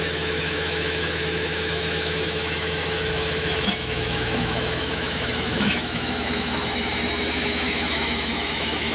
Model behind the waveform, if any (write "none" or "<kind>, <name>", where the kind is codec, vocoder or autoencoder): autoencoder, DAC-VAE